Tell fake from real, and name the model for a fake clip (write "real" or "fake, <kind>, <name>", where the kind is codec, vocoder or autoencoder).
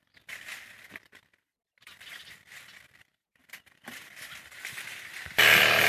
fake, vocoder, BigVGAN v2